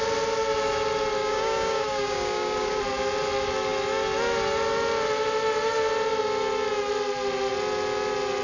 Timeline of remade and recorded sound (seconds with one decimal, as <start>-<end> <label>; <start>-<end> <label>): 0.0-1.2 recorded; 1.2-2.8 remade; 2.8-8.4 recorded